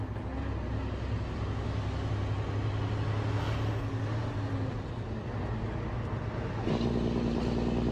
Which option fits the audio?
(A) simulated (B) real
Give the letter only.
B